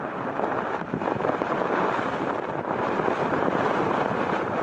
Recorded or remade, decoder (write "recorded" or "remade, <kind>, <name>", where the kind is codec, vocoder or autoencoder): remade, vocoder, BigVGAN v2